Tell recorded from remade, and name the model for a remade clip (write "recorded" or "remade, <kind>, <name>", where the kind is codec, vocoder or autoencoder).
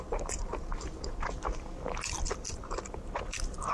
recorded